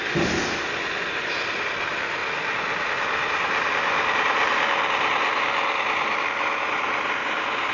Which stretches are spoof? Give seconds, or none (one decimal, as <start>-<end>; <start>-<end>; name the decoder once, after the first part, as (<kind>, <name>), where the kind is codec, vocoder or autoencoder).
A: none